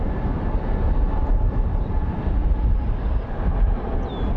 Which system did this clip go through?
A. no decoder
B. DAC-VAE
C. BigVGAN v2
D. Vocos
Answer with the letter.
A